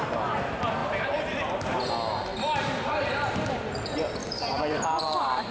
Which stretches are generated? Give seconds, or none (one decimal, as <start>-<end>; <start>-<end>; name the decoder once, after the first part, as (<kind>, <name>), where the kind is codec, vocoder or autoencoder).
0.8-1.9 (vocoder, BigVGAN v2); 2.3-3.8; 4.2-5.5